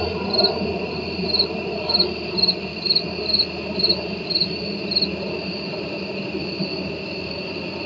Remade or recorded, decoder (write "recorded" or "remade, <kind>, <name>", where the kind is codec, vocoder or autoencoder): recorded